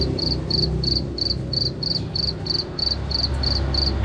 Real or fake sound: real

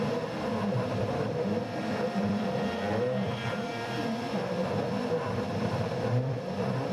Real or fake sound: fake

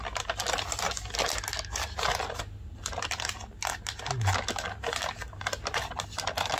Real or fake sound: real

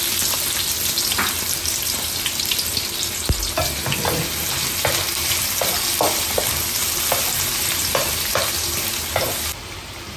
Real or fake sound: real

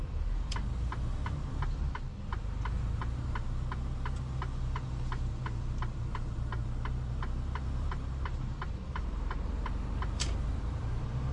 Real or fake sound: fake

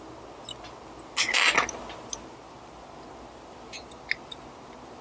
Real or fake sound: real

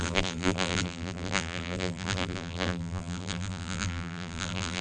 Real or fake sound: fake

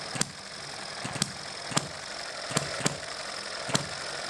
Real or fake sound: real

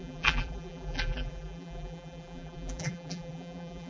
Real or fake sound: fake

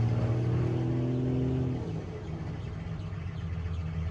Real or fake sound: real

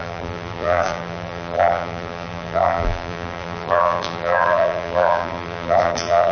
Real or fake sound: fake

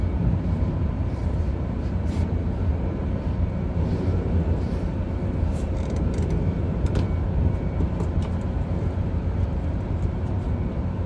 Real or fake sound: fake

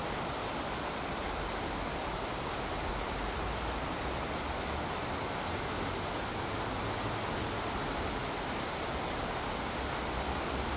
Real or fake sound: real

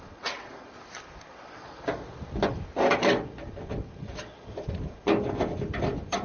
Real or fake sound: real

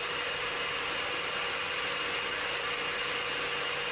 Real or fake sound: real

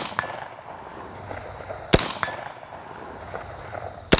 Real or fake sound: real